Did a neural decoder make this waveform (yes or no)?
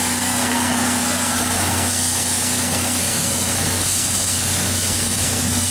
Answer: yes